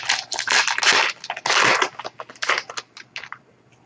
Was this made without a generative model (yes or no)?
yes